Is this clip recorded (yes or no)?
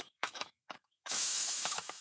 no